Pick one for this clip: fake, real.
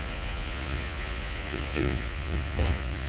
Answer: fake